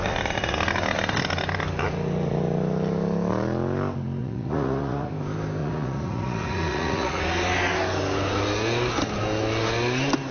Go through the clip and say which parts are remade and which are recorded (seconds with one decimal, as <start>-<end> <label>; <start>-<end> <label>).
0.0-4.2 recorded; 4.2-5.1 remade; 5.1-5.6 recorded; 5.6-7.2 remade; 7.2-10.3 recorded